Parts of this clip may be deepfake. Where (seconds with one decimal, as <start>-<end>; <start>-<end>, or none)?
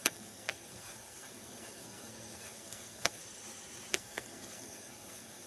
0.0-3.2; 3.9-5.5